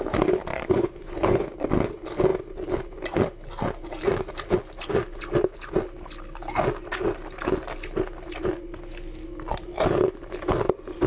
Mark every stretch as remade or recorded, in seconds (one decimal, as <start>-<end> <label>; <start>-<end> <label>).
0.0-0.5 recorded; 0.5-1.5 remade; 1.5-11.1 recorded